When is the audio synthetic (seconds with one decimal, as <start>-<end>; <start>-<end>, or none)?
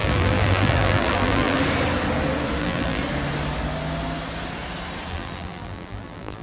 0.0-1.6; 2.6-3.0; 5.1-6.4